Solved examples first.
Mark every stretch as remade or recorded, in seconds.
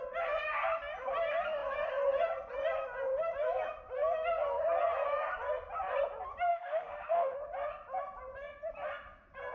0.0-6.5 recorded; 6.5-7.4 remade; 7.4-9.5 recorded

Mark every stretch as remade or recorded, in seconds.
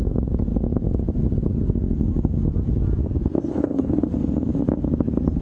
0.0-3.5 recorded; 3.5-4.0 remade; 4.0-5.4 recorded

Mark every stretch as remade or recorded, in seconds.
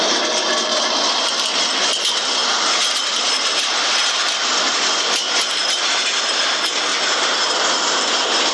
0.0-2.4 recorded; 2.4-3.9 remade; 3.9-6.9 recorded; 6.9-7.4 remade; 7.4-8.5 recorded